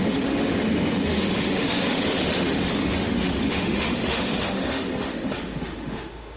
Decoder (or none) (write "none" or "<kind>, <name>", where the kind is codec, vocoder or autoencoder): autoencoder, DAC-VAE